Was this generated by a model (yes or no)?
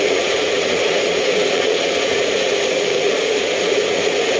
yes